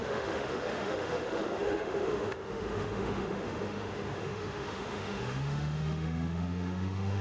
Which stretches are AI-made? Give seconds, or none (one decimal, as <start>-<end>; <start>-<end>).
0.0-7.2